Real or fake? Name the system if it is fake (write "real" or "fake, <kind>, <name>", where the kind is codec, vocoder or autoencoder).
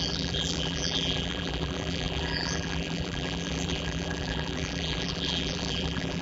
fake, vocoder, BigVGAN v2